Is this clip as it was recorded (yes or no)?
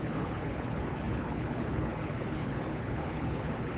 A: no